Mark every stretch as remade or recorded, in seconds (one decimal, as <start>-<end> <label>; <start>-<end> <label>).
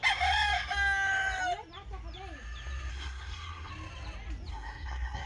0.0-2.9 recorded; 2.9-3.7 remade; 3.7-4.5 recorded; 4.5-5.3 remade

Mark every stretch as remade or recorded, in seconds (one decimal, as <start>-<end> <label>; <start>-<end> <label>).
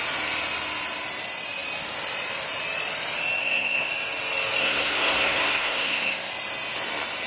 0.0-3.4 recorded; 3.4-3.9 remade; 3.9-4.6 recorded; 4.6-6.3 remade; 6.3-7.3 recorded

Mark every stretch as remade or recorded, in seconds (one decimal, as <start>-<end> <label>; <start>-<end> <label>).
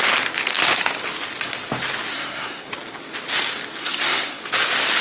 0.0-2.1 recorded; 2.1-2.7 remade; 2.7-3.8 recorded; 3.8-4.4 remade; 4.4-5.0 recorded